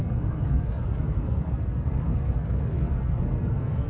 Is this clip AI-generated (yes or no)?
yes